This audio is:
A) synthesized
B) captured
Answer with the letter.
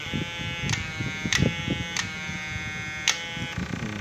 B